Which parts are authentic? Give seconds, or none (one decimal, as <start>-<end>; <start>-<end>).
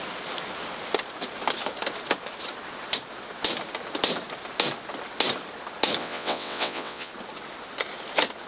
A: 0.0-6.0; 7.1-8.5